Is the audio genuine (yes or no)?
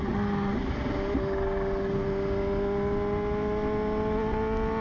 yes